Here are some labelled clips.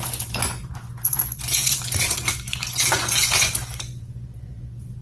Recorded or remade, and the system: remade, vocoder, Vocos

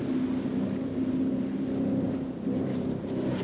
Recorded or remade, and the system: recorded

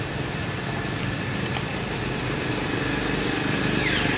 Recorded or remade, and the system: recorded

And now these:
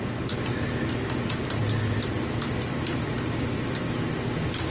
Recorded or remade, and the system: recorded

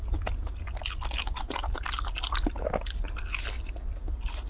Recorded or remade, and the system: recorded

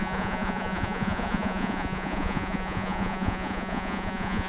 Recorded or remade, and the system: remade, vocoder, Vocos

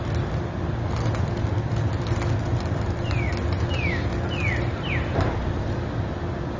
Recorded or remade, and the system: recorded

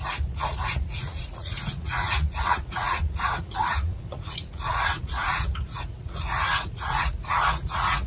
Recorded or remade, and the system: remade, vocoder, Vocos